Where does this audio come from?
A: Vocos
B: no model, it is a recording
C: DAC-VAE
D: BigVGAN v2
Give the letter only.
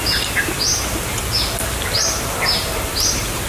B